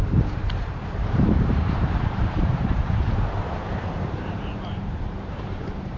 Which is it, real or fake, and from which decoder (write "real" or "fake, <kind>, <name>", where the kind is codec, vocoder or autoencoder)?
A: fake, vocoder, BigVGAN v2